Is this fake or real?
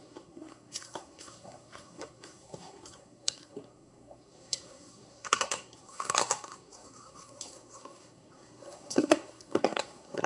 fake